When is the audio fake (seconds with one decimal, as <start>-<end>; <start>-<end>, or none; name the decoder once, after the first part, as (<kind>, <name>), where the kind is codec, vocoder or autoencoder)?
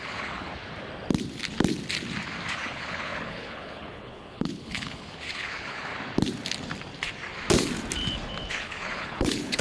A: 0.0-0.5 (codec, HILCodec); 2.5-5.9; 8.5-9.6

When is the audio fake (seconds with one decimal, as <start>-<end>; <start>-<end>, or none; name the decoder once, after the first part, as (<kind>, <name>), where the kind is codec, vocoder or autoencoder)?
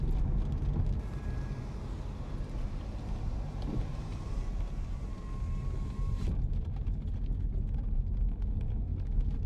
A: 3.9-5.2 (vocoder, BigVGAN v2)